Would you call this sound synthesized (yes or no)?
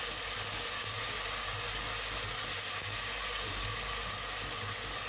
no